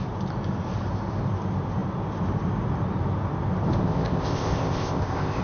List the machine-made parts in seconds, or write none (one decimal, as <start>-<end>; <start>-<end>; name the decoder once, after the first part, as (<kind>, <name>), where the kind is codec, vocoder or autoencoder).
3.8-5.4 (codec, ZipCodec)